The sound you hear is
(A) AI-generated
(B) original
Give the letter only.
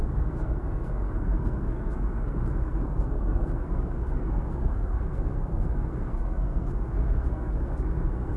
A